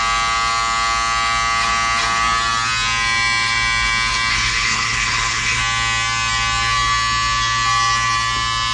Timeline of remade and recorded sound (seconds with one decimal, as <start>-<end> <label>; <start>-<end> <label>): 0.0-4.3 recorded; 4.3-5.6 remade; 5.6-8.7 recorded